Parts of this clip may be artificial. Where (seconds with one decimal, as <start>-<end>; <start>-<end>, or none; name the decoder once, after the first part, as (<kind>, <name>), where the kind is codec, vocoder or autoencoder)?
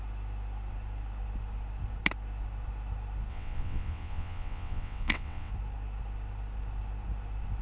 3.3-5.5 (vocoder, WaveNeXt)